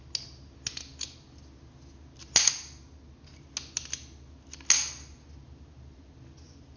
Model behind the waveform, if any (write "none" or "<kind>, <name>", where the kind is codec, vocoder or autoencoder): none